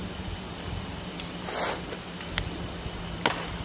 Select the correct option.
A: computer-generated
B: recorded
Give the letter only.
B